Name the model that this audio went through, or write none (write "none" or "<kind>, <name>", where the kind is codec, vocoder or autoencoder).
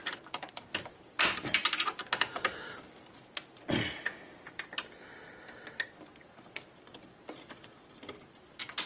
none